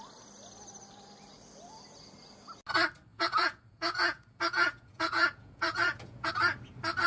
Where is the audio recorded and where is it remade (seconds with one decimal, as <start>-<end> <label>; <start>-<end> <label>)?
0.0-3.1 recorded; 3.1-6.3 remade; 6.3-7.1 recorded